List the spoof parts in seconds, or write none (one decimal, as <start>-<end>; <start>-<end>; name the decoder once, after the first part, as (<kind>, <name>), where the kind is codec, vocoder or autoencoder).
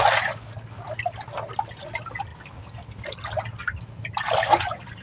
none